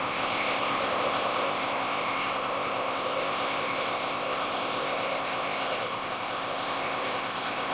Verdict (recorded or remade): remade